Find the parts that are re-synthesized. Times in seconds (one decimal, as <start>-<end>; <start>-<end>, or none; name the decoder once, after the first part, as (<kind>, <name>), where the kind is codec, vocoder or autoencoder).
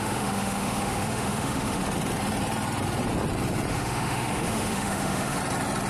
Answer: 0.0-1.8 (autoencoder, DAC-VAE); 3.7-5.4